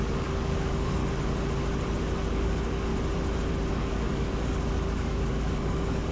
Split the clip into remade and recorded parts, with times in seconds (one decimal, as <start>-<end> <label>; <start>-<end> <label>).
0.0-1.0 remade; 1.0-2.3 recorded; 2.3-2.9 remade; 2.9-3.7 recorded; 3.7-6.1 remade